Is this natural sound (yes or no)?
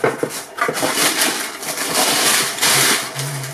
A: yes